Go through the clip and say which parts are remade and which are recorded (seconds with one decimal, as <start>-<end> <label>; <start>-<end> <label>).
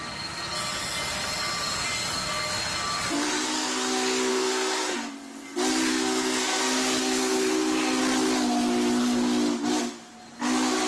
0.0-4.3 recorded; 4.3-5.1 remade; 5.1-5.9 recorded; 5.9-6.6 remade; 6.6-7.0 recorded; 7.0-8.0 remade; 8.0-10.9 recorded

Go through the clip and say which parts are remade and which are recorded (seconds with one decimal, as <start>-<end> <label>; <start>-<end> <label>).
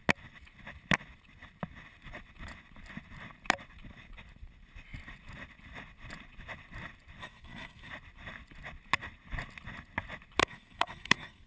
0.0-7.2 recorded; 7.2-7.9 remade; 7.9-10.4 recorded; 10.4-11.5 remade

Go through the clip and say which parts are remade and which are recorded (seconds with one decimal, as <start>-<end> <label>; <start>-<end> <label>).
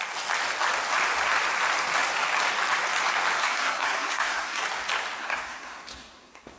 0.0-3.4 recorded; 3.4-4.6 remade; 4.6-5.2 recorded; 5.2-6.6 remade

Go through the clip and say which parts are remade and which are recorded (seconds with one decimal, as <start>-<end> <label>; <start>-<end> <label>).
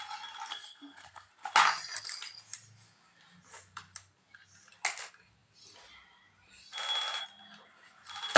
0.0-0.5 recorded; 0.5-1.3 remade; 1.3-8.4 recorded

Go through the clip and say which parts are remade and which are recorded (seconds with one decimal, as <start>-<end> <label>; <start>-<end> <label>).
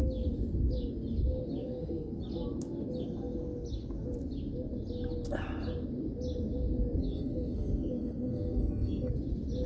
0.0-1.6 recorded; 1.6-2.2 remade; 2.2-7.0 recorded; 7.0-9.1 remade; 9.1-9.7 recorded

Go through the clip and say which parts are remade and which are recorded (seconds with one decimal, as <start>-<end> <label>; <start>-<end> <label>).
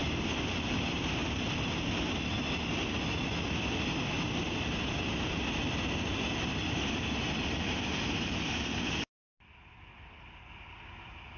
0.0-11.4 recorded